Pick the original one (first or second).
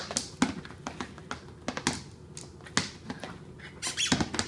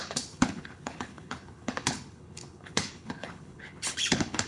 first